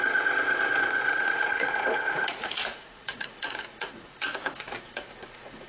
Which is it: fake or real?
fake